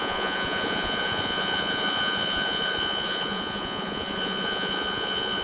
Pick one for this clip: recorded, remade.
remade